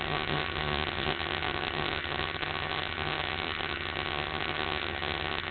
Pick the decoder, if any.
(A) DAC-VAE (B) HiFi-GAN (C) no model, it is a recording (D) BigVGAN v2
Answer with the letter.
B